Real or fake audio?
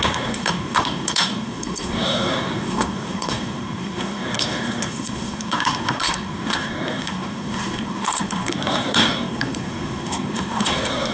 fake